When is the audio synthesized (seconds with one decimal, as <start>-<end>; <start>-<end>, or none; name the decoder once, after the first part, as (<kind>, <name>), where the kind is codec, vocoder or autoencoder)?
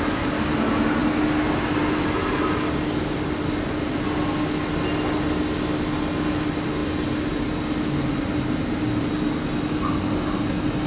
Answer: none